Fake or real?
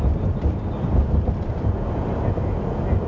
real